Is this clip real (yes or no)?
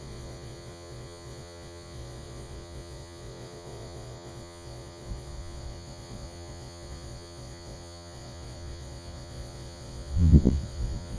no